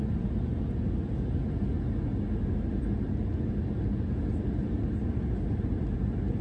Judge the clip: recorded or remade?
recorded